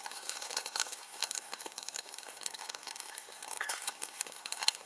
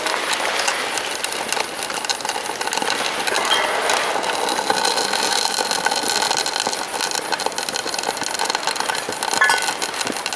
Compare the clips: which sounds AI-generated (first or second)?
first